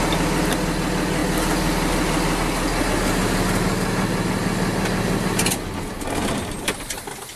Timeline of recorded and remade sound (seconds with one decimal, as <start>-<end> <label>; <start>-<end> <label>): 0.0-6.2 recorded; 6.2-6.7 remade; 6.7-7.4 recorded